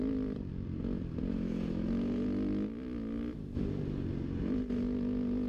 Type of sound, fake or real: real